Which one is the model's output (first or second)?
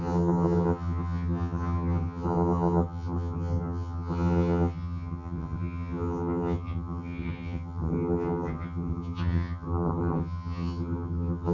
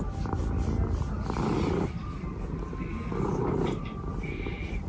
first